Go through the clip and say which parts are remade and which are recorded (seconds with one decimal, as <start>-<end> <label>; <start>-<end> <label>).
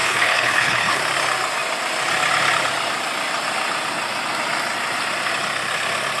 0.0-1.0 remade; 1.0-6.2 recorded